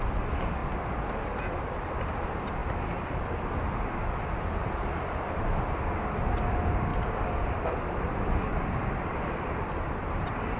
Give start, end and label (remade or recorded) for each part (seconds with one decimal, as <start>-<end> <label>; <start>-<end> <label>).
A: 0.0-10.6 recorded